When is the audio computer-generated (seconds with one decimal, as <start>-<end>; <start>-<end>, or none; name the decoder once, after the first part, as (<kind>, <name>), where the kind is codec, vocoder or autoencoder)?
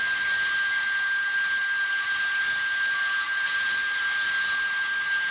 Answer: none